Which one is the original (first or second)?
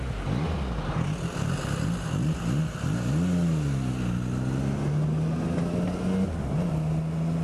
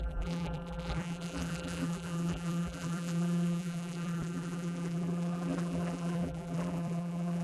first